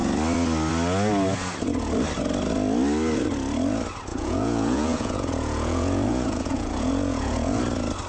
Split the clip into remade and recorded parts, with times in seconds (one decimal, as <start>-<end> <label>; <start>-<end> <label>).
0.0-4.1 recorded; 4.1-7.6 remade; 7.6-8.1 recorded